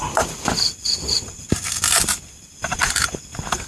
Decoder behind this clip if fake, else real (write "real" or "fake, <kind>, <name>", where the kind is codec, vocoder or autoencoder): real